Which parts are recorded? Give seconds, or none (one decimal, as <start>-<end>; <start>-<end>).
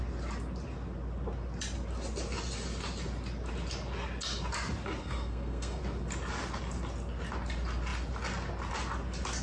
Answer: 0.0-5.0; 5.8-9.4